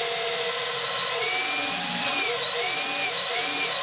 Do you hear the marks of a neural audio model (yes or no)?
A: no